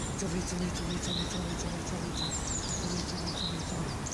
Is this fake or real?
real